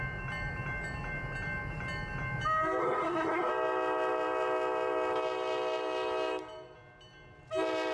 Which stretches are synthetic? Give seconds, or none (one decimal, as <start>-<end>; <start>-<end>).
2.8-3.5